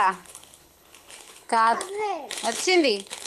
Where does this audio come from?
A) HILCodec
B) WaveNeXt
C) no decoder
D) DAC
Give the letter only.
A